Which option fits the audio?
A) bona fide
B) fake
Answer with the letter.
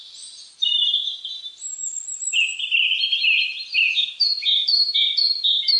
B